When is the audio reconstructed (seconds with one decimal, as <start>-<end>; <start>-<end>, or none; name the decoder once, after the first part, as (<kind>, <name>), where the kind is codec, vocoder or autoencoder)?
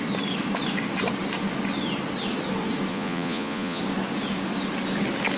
2.9-3.8 (vocoder, Vocos)